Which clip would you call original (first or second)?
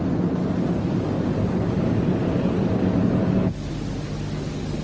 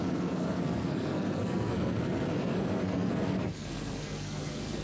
first